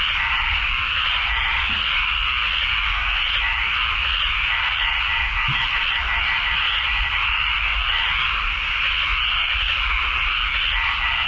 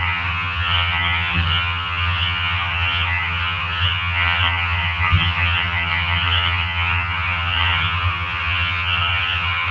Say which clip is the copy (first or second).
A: second